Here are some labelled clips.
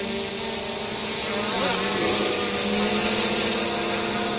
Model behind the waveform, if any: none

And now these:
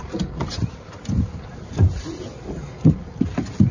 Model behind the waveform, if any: none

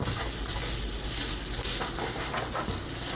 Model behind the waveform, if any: none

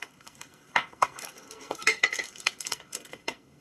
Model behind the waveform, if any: codec, SNAC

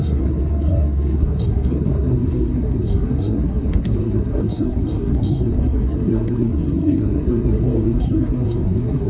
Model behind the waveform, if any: codec, SNAC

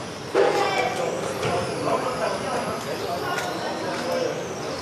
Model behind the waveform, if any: none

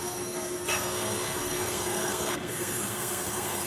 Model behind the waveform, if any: codec, SNAC